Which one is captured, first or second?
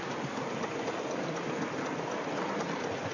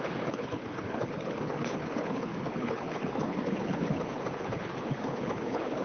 first